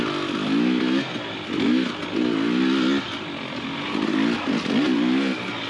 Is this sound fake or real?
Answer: real